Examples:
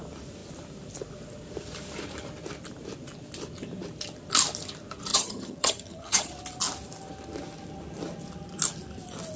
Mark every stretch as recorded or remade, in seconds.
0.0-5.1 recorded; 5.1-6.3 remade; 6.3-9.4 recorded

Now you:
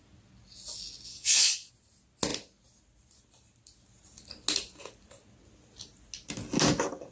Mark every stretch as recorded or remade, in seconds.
0.0-1.1 recorded; 1.1-1.7 remade; 1.7-7.1 recorded

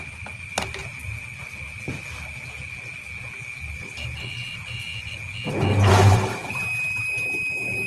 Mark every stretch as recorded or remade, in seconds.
0.0-0.8 remade; 0.8-3.7 recorded; 3.7-4.9 remade; 4.9-5.9 recorded; 5.9-7.9 remade

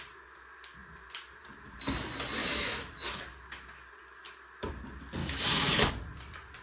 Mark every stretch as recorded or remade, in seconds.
0.0-2.4 recorded; 2.4-3.2 remade; 3.2-5.2 recorded; 5.2-5.9 remade; 5.9-6.6 recorded

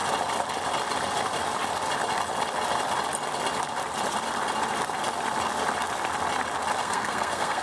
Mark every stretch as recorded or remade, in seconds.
0.0-6.8 recorded; 6.8-7.6 remade

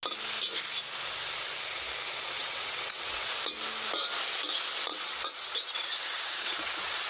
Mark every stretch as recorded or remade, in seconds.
0.0-2.4 recorded; 2.4-3.3 remade; 3.3-4.9 recorded; 4.9-7.1 remade

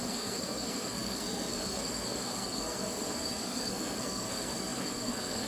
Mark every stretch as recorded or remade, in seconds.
0.0-5.5 remade